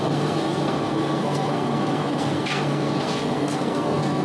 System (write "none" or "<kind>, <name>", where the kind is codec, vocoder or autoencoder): codec, SNAC